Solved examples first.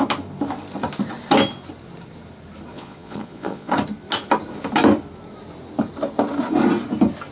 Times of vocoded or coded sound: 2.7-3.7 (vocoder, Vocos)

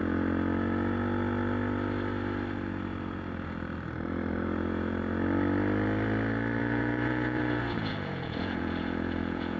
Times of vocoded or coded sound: 6.6-9.6 (vocoder, Vocos)